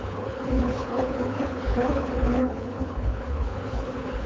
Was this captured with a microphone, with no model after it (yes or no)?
no